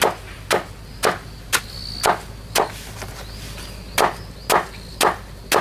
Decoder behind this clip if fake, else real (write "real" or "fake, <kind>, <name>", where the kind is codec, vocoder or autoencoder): real